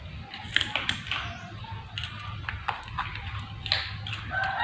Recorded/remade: recorded